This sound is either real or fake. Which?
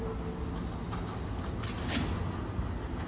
real